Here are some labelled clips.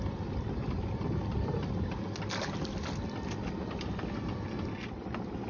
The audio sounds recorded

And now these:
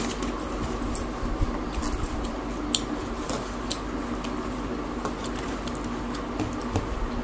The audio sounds recorded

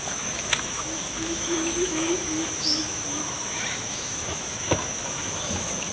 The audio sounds remade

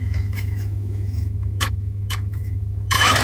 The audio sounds remade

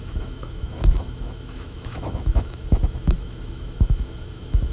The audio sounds remade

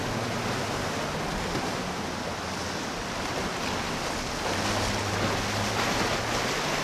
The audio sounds recorded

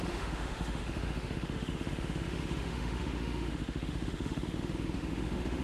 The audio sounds remade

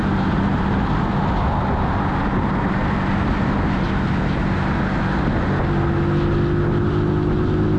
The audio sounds recorded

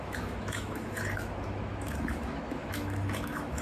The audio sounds remade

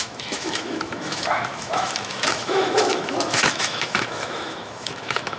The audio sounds remade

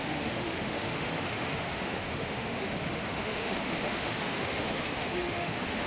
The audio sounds remade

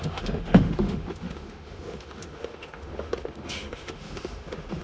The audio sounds remade